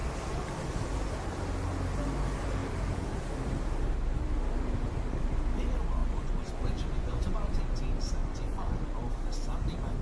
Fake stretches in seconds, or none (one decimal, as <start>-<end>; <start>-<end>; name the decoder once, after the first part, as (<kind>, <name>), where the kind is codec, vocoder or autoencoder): 6.0-7.6 (vocoder, Vocos); 8.2-8.9